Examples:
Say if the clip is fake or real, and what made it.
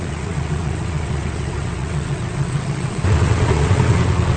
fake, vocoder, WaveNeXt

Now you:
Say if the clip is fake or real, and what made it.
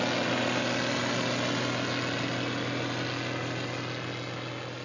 real